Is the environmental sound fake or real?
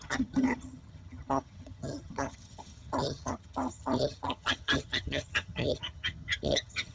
fake